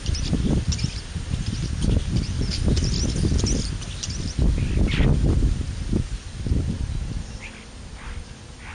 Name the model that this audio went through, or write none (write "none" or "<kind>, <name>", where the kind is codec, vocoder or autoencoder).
none